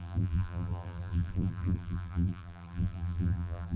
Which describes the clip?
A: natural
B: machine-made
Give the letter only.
B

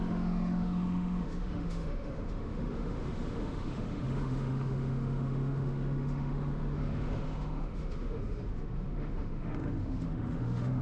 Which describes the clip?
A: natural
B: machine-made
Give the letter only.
B